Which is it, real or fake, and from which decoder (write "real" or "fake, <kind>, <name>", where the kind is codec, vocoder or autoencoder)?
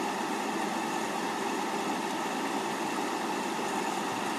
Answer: real